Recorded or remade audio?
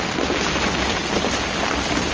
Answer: recorded